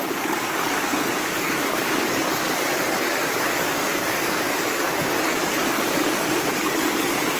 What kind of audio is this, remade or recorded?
remade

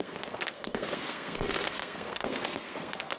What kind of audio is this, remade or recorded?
remade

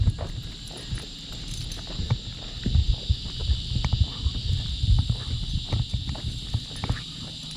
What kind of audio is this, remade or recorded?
recorded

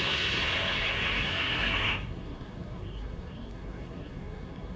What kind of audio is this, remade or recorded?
remade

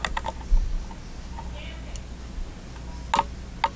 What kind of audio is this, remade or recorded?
recorded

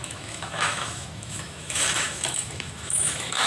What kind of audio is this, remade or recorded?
remade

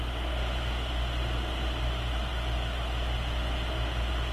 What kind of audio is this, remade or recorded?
recorded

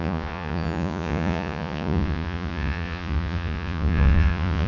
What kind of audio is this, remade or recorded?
remade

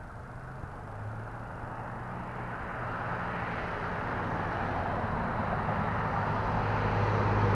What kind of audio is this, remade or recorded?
recorded